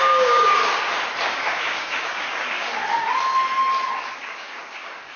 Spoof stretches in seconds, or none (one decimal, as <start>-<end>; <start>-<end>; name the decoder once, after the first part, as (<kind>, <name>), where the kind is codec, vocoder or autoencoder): 0.0-0.6 (codec, DAC); 1.3-2.7; 4.2-5.2